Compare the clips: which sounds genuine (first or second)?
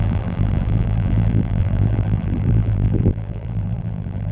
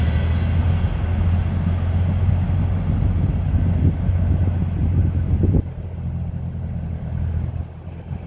second